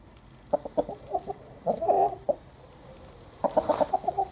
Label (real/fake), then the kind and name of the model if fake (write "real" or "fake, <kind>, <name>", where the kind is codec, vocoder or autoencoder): fake, vocoder, BigVGAN v2